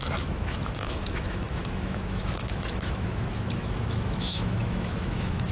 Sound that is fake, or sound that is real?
fake